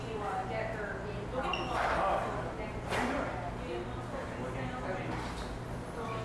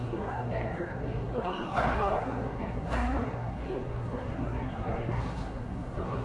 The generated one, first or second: second